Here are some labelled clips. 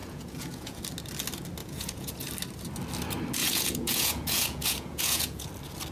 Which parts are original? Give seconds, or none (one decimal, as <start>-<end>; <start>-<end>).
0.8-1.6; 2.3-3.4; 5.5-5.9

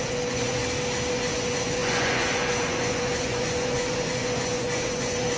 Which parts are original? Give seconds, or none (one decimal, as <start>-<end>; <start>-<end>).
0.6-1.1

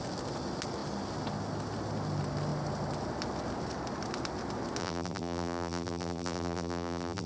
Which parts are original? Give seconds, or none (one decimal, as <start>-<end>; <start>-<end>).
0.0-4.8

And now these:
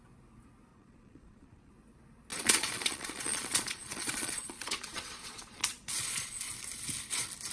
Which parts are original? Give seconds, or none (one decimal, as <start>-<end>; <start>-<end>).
0.0-0.7; 1.7-2.3; 6.4-7.5